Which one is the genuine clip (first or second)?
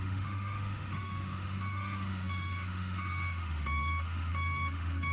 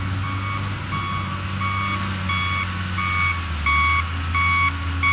second